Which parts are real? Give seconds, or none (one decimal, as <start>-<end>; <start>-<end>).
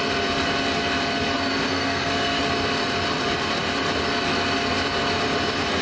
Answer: 0.0-1.7; 2.4-5.8